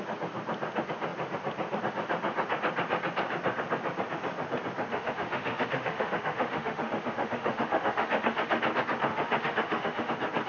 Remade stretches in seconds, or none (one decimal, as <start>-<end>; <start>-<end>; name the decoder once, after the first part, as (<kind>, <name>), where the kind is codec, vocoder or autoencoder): 4.9-8.6 (autoencoder, DAC-VAE); 9.1-10.1